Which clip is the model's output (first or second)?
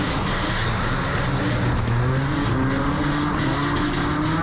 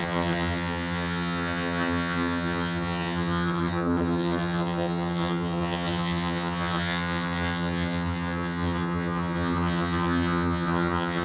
second